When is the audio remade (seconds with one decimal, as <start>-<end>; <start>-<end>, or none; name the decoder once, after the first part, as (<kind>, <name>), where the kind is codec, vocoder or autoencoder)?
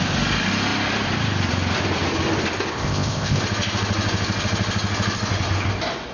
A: 2.7-3.4 (codec, ZipCodec)